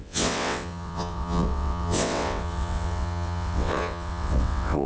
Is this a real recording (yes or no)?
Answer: no